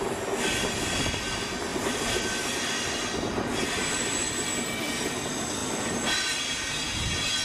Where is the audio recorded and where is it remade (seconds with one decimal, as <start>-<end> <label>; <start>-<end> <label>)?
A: 0.0-1.7 recorded; 1.7-2.2 remade; 2.2-5.6 recorded; 5.6-6.4 remade; 6.4-7.4 recorded